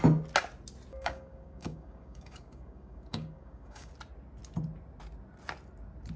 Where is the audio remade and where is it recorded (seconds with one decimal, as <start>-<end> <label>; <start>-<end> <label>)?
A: 0.0-0.9 recorded; 0.9-3.9 remade; 3.9-6.2 recorded